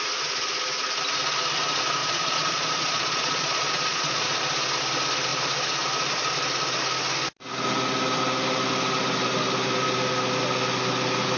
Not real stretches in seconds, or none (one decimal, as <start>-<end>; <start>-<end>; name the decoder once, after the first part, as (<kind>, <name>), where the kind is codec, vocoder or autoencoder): 2.0-4.4 (vocoder, Vocos)